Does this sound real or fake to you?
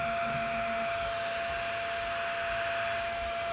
real